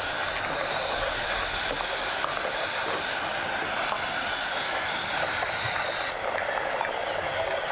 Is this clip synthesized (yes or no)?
no